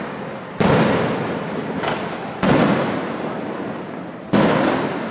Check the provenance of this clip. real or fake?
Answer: real